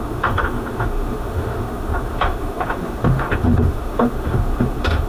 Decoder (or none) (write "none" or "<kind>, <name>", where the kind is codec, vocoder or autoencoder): autoencoder, DAC-VAE